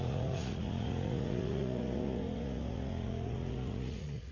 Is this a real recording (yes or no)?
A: no